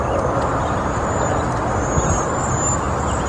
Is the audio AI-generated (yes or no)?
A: no